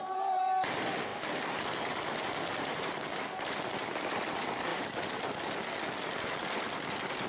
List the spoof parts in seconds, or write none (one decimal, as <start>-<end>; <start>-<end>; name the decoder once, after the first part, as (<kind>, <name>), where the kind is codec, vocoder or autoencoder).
none